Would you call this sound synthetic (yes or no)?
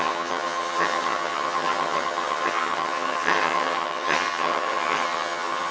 yes